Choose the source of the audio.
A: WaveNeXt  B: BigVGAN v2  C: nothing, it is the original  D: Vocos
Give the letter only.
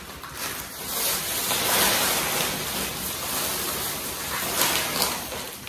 B